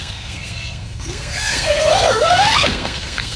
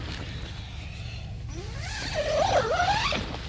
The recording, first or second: second